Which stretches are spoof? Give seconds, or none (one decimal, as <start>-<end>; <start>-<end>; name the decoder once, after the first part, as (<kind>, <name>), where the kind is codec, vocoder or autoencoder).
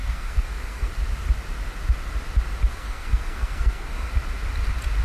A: 0.0-0.9 (codec, SNAC); 2.7-4.1